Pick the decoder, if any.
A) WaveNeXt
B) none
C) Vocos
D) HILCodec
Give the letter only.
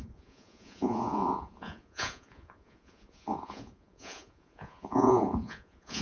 C